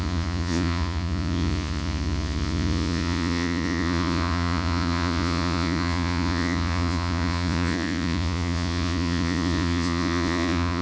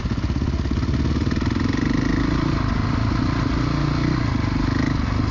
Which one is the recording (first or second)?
second